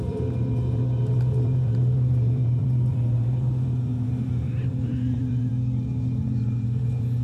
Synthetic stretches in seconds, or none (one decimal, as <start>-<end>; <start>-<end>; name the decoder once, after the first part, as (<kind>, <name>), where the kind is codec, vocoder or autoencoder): 0.0-5.5 (vocoder, BigVGAN v2); 6.2-7.2